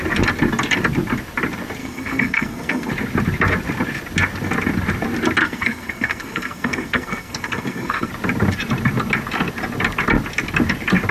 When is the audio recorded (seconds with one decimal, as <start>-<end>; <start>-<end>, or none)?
0.0-1.8; 2.9-5.4; 8.1-11.1